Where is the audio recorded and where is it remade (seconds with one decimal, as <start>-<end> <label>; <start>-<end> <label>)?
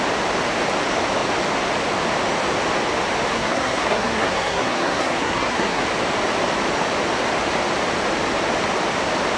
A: 0.0-3.3 recorded; 3.3-5.8 remade; 5.8-9.4 recorded